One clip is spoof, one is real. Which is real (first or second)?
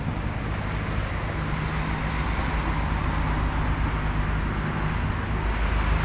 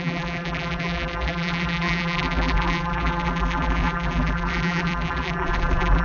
first